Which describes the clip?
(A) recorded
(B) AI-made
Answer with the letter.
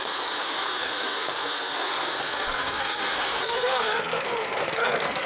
B